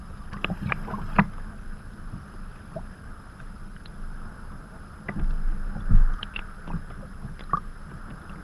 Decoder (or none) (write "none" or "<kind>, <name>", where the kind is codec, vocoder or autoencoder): none